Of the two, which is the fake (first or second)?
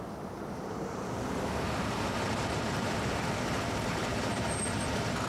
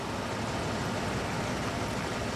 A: first